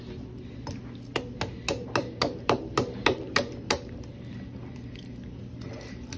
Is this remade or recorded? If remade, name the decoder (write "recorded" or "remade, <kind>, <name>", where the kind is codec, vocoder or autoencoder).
recorded